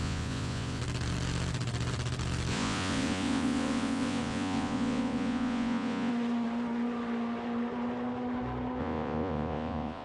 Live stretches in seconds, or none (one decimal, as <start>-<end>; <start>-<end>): 0.8-2.5; 6.1-8.8